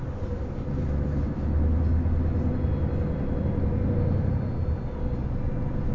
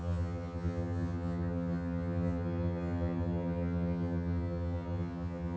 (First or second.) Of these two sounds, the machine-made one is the second